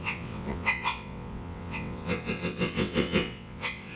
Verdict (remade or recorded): remade